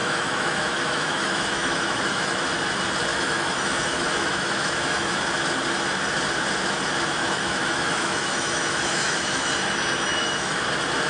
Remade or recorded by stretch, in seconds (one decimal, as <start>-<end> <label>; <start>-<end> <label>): 0.0-2.5 remade; 2.5-3.1 recorded; 3.1-5.2 remade; 5.2-7.2 recorded; 7.2-9.5 remade; 9.5-10.1 recorded; 10.1-10.6 remade; 10.6-11.1 recorded